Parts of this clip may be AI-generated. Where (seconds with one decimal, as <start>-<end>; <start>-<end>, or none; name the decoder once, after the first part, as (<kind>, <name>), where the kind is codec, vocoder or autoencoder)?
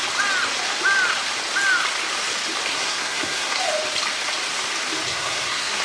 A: 2.7-3.6 (codec, SNAC); 5.1-5.8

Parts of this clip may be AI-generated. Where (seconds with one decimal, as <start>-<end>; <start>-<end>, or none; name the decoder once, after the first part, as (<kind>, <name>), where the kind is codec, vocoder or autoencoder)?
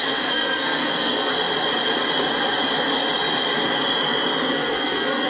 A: 0.0-1.3 (codec, SNAC); 4.5-5.3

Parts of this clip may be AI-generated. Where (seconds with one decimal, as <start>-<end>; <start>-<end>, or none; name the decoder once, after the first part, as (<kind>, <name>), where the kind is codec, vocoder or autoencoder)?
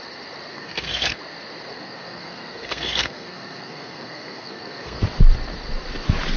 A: 0.5-1.2 (codec, SNAC); 1.7-5.0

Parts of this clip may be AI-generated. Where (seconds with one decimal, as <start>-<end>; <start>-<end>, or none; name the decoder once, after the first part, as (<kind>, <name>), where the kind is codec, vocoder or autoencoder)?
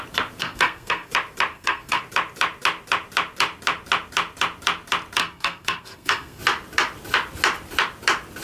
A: 0.4-1.1 (codec, SNAC); 1.5-2.0; 5.2-6.4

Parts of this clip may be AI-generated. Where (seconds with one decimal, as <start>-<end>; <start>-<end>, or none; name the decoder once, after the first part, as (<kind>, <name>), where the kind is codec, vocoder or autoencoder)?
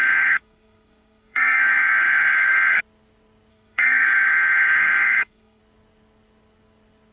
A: 0.0-2.8 (codec, SNAC); 3.5-5.6